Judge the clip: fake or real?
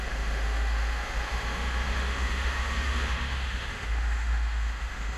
fake